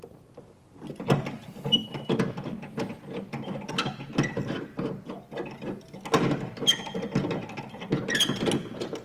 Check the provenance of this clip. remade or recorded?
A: recorded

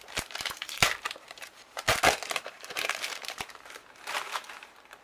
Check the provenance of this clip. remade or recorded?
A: remade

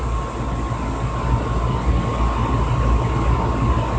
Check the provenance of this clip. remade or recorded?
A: recorded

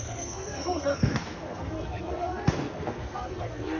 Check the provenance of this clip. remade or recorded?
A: remade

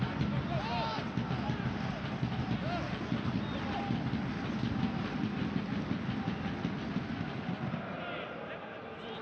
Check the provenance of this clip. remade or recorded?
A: recorded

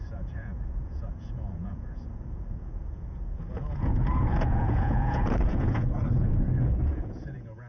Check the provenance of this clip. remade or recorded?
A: remade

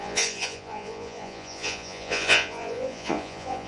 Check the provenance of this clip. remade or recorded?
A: remade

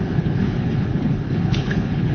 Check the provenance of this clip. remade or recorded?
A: remade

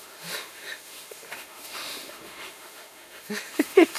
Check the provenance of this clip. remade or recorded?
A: remade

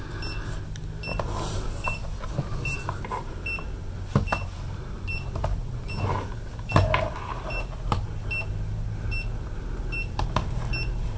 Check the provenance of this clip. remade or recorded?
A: recorded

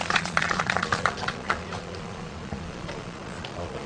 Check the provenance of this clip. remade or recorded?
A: remade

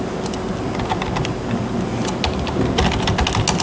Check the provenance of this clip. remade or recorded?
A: recorded